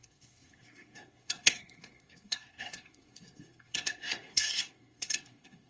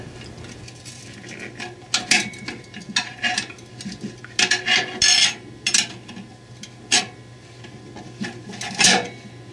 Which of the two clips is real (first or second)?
second